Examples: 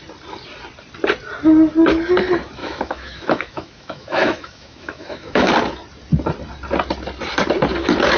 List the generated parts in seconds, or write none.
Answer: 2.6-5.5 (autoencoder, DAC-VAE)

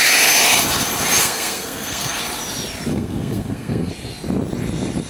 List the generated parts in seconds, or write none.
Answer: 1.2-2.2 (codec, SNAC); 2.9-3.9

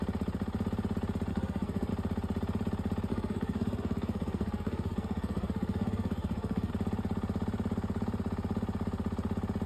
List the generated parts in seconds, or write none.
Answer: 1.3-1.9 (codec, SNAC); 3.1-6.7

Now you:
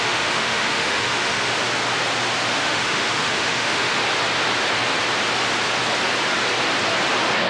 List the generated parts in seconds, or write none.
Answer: 0.0-1.5 (autoencoder, DAC-VAE); 2.5-4.0

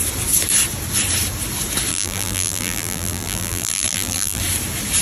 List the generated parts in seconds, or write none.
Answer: 1.9-4.4 (vocoder, BigVGAN v2)